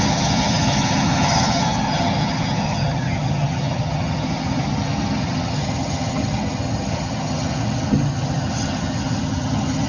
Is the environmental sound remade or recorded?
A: remade